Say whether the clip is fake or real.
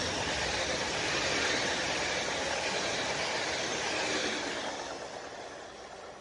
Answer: real